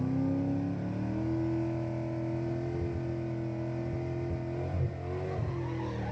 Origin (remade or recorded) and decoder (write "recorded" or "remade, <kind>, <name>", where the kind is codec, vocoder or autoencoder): recorded